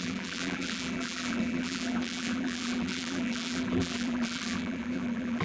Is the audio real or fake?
fake